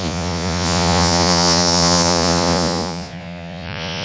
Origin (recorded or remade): remade